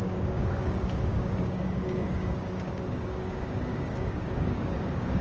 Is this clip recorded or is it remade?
remade